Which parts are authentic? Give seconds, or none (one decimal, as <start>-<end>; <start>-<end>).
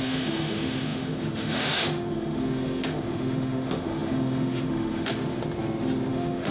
5.4-6.1